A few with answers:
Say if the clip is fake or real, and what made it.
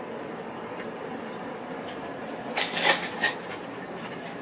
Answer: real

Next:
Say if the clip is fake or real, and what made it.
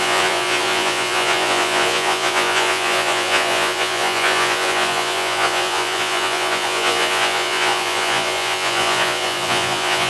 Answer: fake, vocoder, Vocos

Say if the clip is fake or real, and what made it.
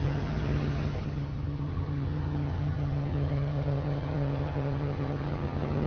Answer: fake, vocoder, HiFi-GAN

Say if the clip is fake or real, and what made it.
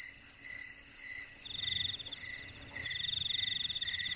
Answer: real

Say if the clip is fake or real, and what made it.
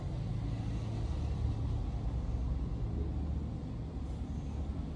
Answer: real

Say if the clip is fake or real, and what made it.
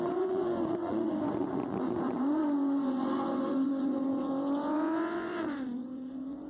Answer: fake, vocoder, Vocos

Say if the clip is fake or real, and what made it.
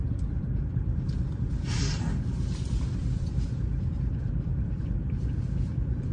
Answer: fake, vocoder, BigVGAN v2